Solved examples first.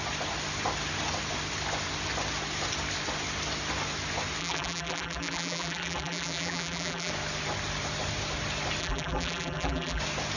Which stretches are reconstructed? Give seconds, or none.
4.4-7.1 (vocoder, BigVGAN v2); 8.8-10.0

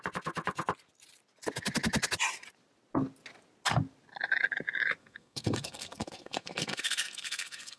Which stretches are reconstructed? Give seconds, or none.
5.0-7.8 (codec, SNAC)

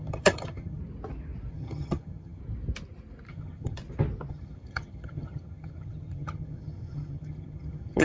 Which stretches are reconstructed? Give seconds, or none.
0.0-0.8 (vocoder, HiFi-GAN); 1.5-2.4; 3.3-3.8; 4.3-8.0

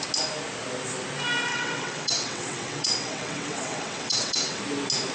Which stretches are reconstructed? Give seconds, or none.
1.5-4.6 (vocoder, WaveNeXt)

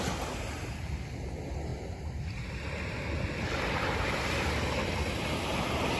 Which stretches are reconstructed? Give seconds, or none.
none